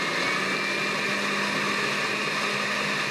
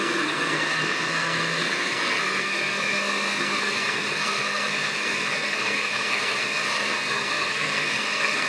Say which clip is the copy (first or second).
second